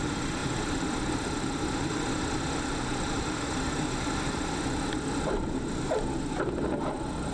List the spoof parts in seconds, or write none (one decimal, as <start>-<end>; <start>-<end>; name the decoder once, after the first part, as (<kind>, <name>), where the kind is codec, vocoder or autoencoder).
0.4-2.1 (vocoder, BigVGAN v2)